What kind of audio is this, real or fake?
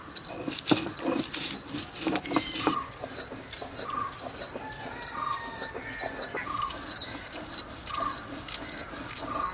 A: real